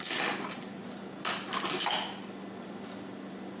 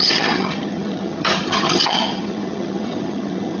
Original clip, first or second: first